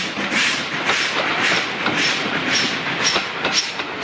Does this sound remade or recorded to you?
recorded